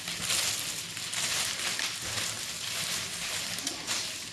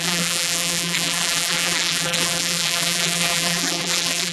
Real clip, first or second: first